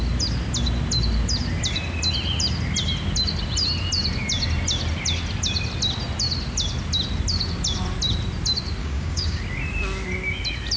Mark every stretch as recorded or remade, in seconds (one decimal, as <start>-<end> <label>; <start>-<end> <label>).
0.0-8.8 recorded; 8.8-9.4 remade; 9.4-10.8 recorded